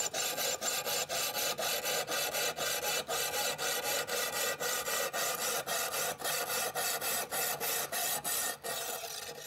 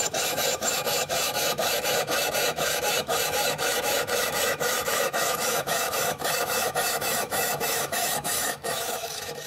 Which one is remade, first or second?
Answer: second